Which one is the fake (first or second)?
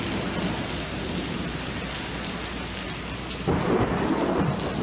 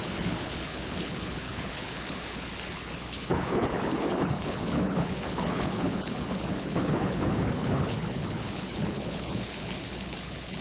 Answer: second